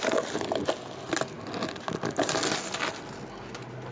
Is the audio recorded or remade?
recorded